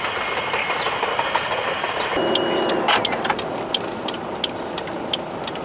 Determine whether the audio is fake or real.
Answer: real